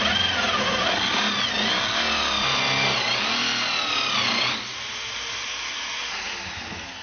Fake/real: real